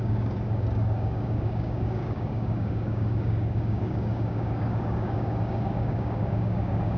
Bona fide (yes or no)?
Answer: no